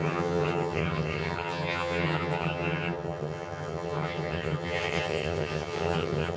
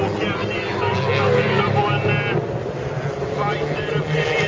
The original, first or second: second